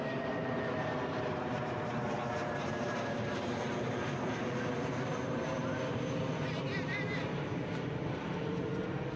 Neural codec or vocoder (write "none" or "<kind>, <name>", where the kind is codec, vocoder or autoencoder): vocoder, BigVGAN v2